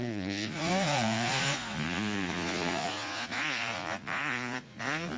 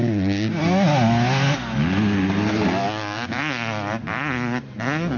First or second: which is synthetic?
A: first